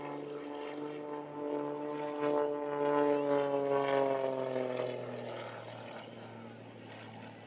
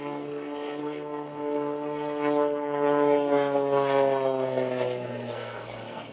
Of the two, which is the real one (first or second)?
first